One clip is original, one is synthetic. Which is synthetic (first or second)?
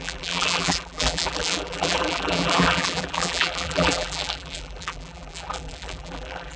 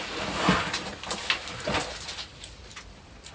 first